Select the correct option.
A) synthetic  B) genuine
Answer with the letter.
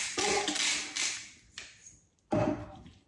B